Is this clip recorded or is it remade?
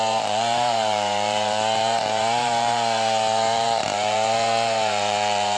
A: remade